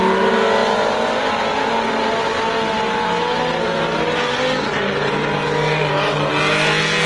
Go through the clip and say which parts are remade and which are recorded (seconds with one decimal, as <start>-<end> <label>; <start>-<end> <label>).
0.0-7.1 recorded